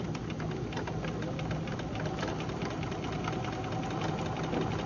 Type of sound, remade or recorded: recorded